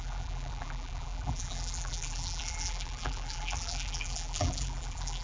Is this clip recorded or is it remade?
remade